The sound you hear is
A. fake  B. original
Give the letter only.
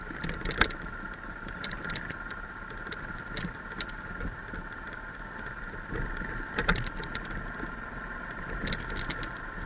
B